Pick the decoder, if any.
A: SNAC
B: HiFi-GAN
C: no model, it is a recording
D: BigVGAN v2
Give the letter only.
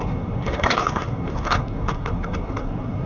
A